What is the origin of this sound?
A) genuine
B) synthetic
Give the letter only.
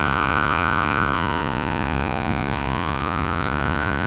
B